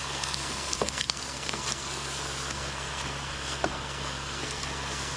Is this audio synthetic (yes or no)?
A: yes